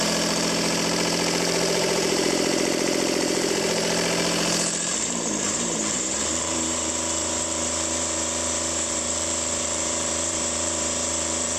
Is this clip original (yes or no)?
no